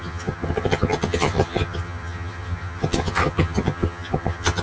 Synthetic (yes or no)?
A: yes